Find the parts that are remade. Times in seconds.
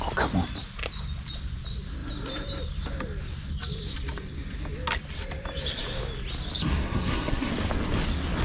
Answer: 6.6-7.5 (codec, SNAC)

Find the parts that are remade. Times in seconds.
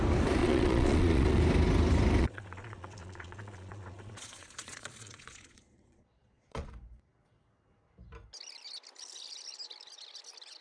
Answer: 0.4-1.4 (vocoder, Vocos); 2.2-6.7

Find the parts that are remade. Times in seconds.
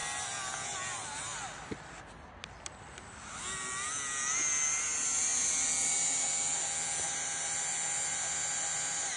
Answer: none